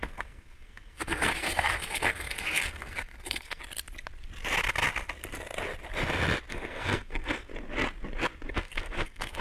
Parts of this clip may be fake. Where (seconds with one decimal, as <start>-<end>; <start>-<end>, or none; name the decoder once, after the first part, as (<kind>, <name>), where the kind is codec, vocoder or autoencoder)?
0.0-3.6 (codec, SNAC); 6.5-7.5; 8.5-9.4